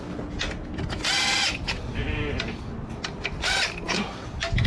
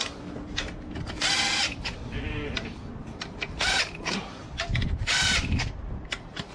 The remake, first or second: second